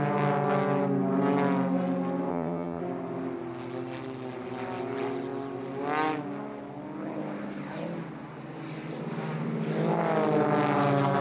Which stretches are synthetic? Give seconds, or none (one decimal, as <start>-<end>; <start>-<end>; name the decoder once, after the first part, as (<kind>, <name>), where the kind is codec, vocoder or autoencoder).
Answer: 2.3-2.8 (vocoder, HiFi-GAN)